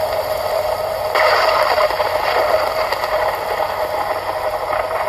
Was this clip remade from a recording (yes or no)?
no